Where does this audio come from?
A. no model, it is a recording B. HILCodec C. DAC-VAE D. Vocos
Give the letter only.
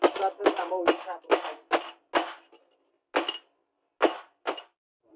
A